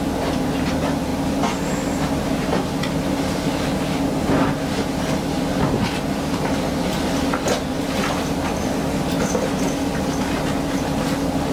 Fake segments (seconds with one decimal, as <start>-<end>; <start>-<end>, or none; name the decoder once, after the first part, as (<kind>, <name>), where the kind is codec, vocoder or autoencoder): none